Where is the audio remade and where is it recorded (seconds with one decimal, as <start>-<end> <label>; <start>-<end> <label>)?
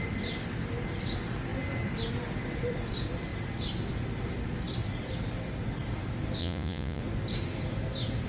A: 0.0-6.4 recorded; 6.4-7.0 remade; 7.0-8.3 recorded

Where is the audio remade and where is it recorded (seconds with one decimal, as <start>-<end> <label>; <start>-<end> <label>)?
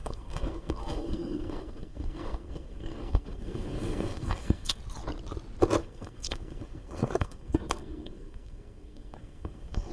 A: 0.0-4.8 remade; 4.8-5.8 recorded; 5.8-9.9 remade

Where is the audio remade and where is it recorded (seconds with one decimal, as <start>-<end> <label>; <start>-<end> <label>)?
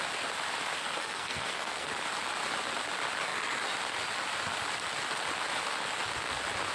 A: 0.0-0.8 recorded; 0.8-1.9 remade; 1.9-6.7 recorded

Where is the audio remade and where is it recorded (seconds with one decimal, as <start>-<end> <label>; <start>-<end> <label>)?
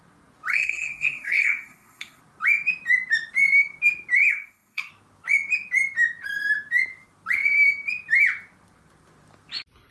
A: 0.0-0.5 recorded; 0.5-2.2 remade; 2.2-4.3 recorded; 4.3-4.9 remade; 4.9-9.9 recorded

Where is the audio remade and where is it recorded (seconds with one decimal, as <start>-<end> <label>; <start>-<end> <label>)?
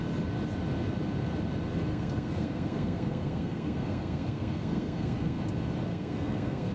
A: 0.0-1.9 recorded; 1.9-5.4 remade; 5.4-5.9 recorded; 5.9-6.7 remade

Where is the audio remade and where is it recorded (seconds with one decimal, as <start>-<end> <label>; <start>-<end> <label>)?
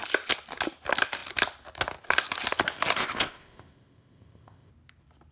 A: 0.0-3.0 recorded; 3.0-4.7 remade; 4.7-5.3 recorded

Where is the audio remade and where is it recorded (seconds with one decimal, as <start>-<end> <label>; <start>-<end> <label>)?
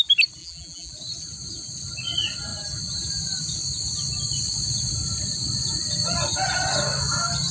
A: 0.0-0.4 recorded; 0.4-0.9 remade; 0.9-7.5 recorded